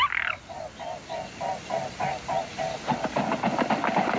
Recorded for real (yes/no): yes